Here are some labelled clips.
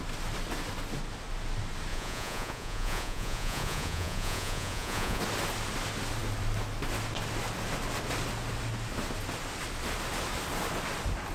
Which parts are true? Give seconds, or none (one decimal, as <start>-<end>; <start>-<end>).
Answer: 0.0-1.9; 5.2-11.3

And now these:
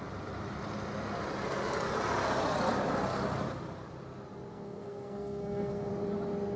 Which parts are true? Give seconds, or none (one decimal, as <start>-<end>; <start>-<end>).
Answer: 0.0-4.5; 5.9-6.6

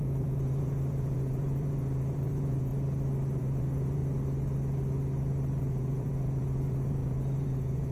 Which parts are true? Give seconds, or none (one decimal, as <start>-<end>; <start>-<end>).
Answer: 2.7-3.4; 4.0-5.6

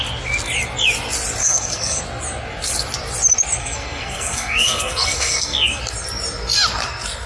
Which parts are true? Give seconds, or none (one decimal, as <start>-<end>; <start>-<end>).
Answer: 0.0-1.4; 2.0-3.6; 5.8-7.3

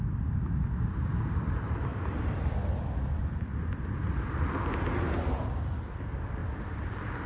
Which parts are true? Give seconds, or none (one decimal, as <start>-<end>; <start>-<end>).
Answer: 0.0-1.9; 4.6-7.3

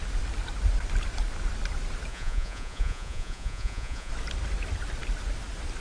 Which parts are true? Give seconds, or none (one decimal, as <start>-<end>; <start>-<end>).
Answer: 0.0-2.1; 4.1-5.8

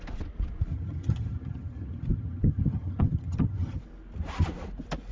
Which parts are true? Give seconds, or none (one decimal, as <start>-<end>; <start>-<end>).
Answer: 0.0-0.7; 3.8-5.1

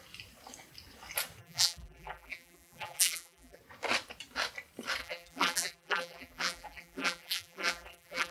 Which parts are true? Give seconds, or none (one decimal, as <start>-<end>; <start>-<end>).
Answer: 0.0-1.4; 3.6-5.0